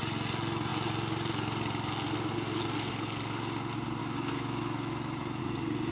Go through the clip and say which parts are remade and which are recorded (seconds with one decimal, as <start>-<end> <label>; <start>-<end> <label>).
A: 0.0-4.0 recorded; 4.0-5.4 remade; 5.4-5.9 recorded